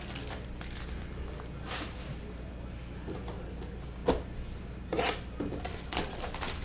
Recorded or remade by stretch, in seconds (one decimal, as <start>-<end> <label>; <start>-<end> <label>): 0.0-6.6 recorded